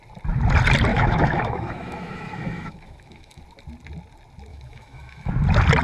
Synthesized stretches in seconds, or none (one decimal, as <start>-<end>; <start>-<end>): 0.9-3.4; 4.5-5.3